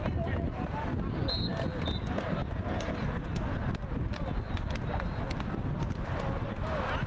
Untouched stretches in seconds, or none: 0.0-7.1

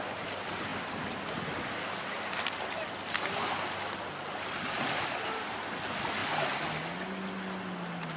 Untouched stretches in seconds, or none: 0.0-8.2

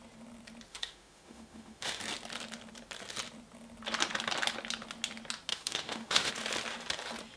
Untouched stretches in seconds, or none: 0.0-0.7; 2.0-5.5; 6.3-7.4

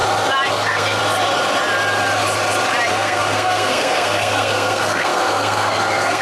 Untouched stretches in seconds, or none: 0.0-0.5; 1.0-2.9

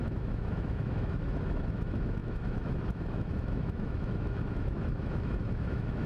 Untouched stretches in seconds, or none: none

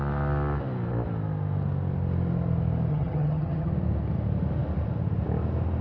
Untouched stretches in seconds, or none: 0.0-2.9; 3.7-5.8

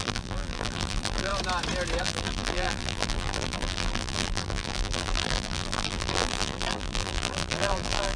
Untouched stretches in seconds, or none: 1.3-2.0